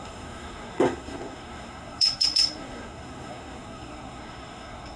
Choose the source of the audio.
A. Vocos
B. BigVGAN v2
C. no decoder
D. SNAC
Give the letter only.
D